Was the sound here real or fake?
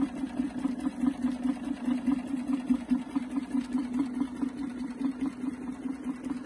real